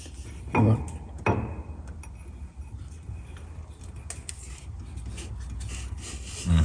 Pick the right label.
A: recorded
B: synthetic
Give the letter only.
A